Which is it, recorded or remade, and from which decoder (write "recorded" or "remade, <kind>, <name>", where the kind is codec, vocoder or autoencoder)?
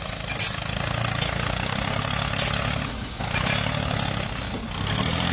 recorded